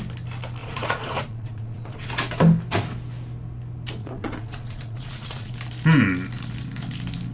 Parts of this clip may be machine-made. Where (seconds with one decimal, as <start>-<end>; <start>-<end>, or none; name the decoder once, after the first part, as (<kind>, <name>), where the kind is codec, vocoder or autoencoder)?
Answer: 0.6-2.1 (vocoder, Vocos); 4.0-5.5